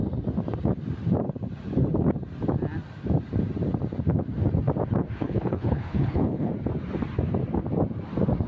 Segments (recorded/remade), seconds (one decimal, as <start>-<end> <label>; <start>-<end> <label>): 0.0-5.2 recorded; 5.2-6.5 remade; 6.5-8.5 recorded